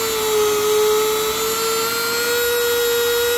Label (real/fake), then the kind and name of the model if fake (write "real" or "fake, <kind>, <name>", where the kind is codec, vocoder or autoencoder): real